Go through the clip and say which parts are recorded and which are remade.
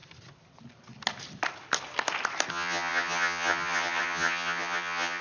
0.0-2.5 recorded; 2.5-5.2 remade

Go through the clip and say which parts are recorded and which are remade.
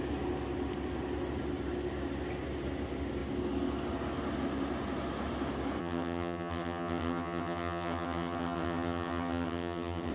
0.0-5.8 recorded; 5.8-10.1 remade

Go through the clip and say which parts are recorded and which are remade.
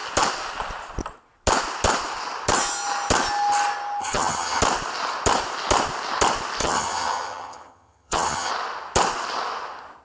0.0-4.0 recorded; 4.0-4.6 remade; 4.6-6.6 recorded; 6.6-8.5 remade; 8.5-10.0 recorded